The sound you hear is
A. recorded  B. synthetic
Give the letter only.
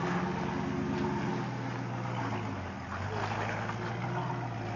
A